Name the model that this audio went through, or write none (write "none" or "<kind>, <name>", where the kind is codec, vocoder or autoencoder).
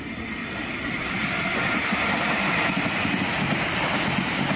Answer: none